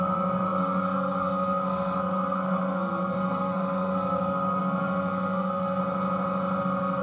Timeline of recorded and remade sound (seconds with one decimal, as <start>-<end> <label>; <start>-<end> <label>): 0.0-5.8 remade; 5.8-6.6 recorded; 6.6-7.0 remade

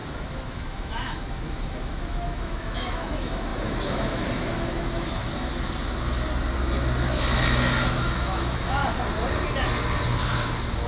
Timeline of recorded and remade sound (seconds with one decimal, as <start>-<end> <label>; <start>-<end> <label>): 0.0-5.5 remade; 5.5-7.9 recorded; 7.9-8.8 remade; 8.8-10.9 recorded